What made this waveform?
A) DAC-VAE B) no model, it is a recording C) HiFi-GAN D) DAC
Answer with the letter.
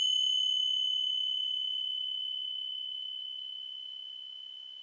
B